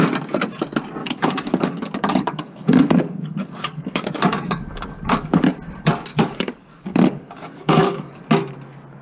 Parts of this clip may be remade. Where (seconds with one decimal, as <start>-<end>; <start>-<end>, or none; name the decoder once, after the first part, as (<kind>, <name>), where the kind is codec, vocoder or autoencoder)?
1.0-5.4 (codec, DAC); 6.1-8.2